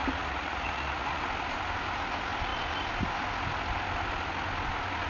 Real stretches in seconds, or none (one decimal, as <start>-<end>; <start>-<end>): 1.2-5.1